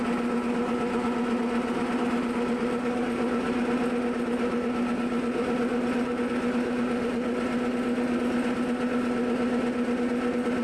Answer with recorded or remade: recorded